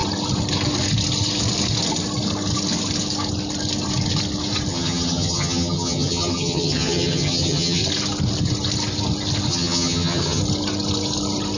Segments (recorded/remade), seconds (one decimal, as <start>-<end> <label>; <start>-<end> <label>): 0.0-4.7 recorded; 4.7-7.8 remade; 7.8-9.5 recorded; 9.5-10.4 remade; 10.4-11.6 recorded

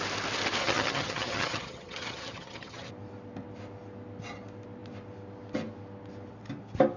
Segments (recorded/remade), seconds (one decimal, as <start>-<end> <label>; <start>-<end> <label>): 0.0-0.6 recorded; 0.6-2.9 remade; 2.9-7.0 recorded

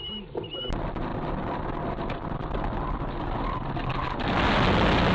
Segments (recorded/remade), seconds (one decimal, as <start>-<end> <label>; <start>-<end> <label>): 0.0-5.1 recorded

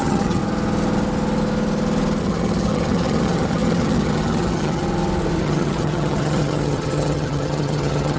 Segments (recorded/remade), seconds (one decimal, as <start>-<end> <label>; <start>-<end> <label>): 0.0-0.4 remade; 0.4-2.2 recorded; 2.2-4.8 remade; 4.8-5.4 recorded; 5.4-8.2 remade

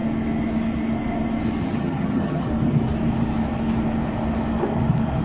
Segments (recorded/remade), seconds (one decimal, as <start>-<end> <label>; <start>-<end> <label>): 0.0-1.6 recorded; 1.6-2.5 remade; 2.5-5.2 recorded

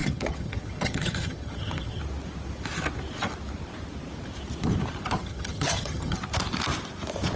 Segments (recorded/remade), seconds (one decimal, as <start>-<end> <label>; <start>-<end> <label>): 0.0-2.0 remade; 2.0-5.2 recorded; 5.2-6.2 remade; 6.2-7.4 recorded

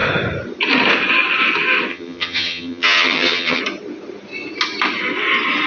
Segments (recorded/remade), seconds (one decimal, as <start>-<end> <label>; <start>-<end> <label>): 0.0-1.9 recorded; 1.9-3.6 remade; 3.6-5.7 recorded